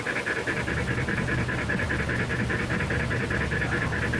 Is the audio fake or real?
real